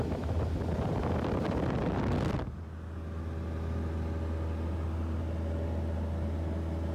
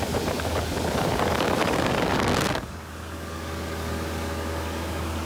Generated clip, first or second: second